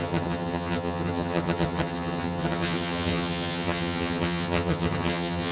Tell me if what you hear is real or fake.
fake